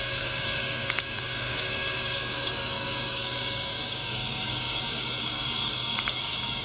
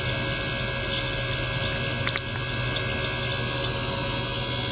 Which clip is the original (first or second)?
second